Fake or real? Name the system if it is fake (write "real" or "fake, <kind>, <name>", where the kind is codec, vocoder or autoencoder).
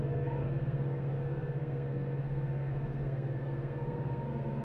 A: fake, codec, SNAC